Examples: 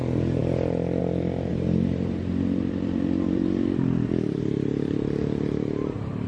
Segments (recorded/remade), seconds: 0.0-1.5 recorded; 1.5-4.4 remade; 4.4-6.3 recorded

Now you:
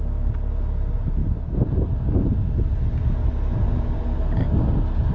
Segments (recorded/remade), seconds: 0.0-5.1 recorded

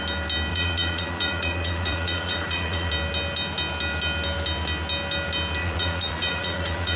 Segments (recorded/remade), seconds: 0.0-0.5 recorded; 0.5-2.9 remade; 2.9-5.6 recorded; 5.6-7.0 remade